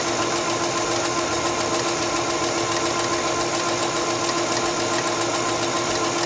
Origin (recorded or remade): recorded